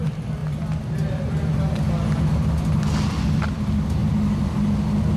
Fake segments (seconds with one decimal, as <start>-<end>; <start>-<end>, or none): none

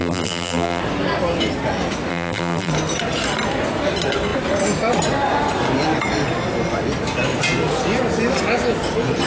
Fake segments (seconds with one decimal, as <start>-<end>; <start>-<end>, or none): 0.0-0.8; 2.1-2.7

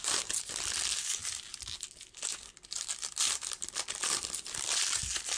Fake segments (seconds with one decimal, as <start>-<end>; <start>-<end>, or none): 0.0-0.5

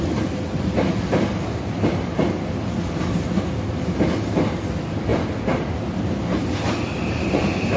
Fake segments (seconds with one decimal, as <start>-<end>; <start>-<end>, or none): none